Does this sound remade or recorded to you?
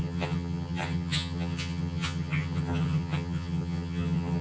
remade